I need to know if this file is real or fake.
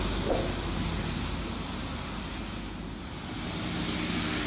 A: real